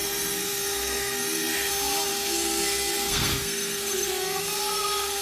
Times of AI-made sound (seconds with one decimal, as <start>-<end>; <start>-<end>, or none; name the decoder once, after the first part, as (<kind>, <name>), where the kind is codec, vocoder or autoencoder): 0.0-1.7 (codec, SNAC); 2.1-5.2